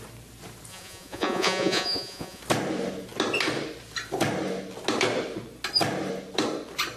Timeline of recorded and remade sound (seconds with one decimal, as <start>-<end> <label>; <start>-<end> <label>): 0.0-0.7 recorded; 0.7-2.4 remade; 2.4-7.0 recorded